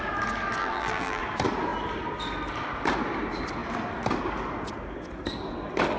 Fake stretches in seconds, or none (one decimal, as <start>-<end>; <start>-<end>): 0.6-1.2